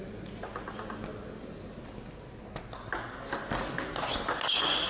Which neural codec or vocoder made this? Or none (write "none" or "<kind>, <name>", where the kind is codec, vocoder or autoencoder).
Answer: none